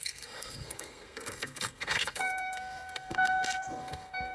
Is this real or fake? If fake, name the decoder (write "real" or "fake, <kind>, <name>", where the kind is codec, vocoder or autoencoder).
fake, codec, SNAC